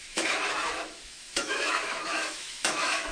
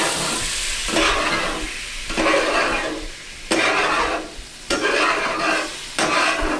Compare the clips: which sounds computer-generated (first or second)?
first